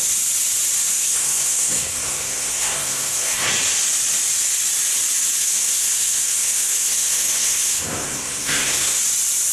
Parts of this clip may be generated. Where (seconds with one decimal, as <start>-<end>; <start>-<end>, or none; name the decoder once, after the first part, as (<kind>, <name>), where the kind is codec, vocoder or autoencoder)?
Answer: 0.9-3.5 (codec, SNAC); 5.4-9.0